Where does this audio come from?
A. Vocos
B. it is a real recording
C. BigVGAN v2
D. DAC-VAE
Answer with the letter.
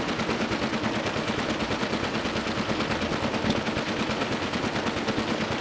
B